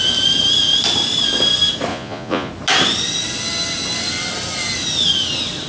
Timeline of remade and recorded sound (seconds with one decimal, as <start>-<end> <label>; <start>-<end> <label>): 0.0-1.9 recorded; 1.9-2.5 remade; 2.5-5.7 recorded